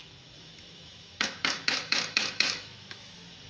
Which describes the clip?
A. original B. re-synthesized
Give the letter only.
B